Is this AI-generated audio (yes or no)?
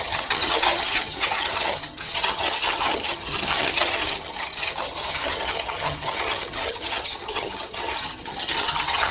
yes